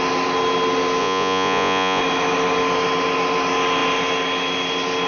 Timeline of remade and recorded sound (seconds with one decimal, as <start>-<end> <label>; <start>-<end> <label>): 0.0-1.0 recorded; 1.0-2.0 remade; 2.0-5.1 recorded